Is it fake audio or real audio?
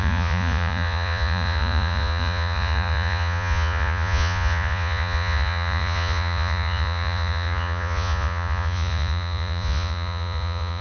fake